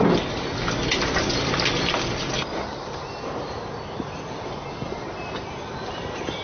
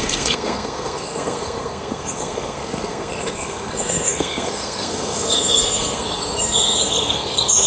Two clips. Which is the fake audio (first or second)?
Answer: second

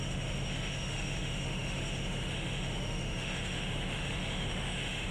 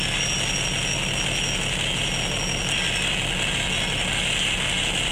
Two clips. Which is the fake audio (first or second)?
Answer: first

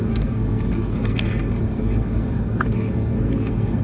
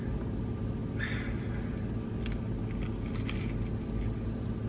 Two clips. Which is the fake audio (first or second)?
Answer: first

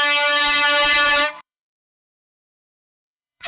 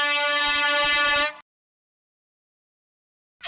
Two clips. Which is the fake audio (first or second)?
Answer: first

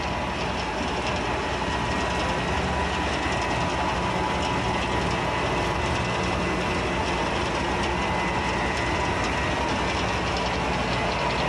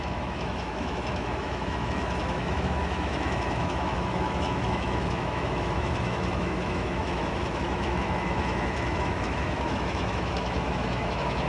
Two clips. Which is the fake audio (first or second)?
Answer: second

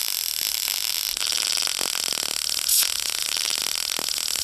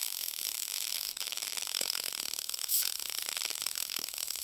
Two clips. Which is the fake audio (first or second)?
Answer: second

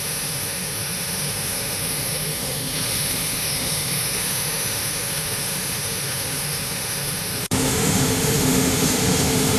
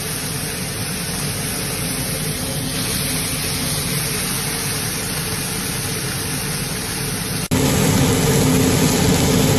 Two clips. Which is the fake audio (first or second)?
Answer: first